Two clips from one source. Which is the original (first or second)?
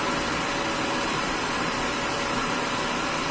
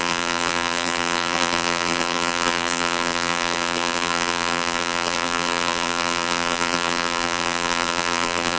first